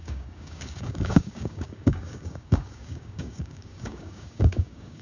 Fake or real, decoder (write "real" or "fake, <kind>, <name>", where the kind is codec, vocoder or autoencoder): fake, codec, DAC